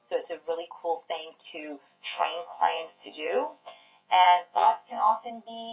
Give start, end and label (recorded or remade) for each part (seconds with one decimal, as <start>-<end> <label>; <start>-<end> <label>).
0.0-1.9 recorded; 1.9-5.3 remade; 5.3-5.7 recorded